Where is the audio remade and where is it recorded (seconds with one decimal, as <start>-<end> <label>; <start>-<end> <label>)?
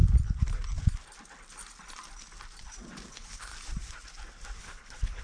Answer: 0.0-3.1 recorded; 3.1-3.5 remade; 3.5-4.6 recorded; 4.6-5.2 remade